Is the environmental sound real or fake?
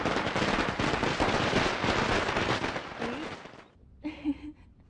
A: real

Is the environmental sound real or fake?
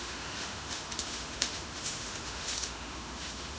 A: fake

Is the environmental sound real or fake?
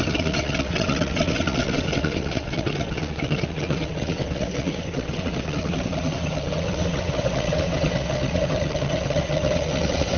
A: fake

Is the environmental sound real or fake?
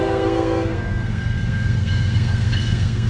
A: fake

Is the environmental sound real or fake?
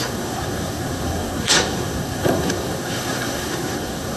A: fake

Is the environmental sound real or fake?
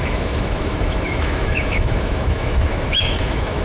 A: fake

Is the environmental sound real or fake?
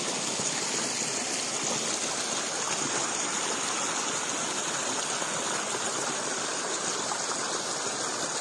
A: real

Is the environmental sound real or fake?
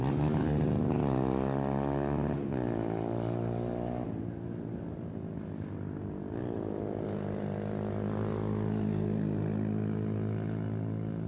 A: real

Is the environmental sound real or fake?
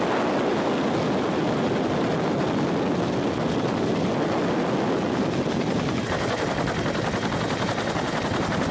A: real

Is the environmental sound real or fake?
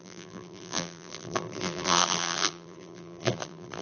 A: fake